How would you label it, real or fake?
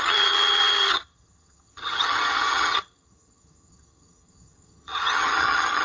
fake